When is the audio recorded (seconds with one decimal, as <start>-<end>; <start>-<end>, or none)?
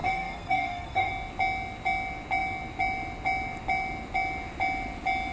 1.1-5.3